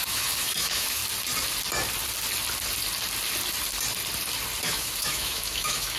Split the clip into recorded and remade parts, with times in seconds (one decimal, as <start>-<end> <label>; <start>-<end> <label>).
0.0-1.0 remade; 1.0-4.6 recorded; 4.6-6.0 remade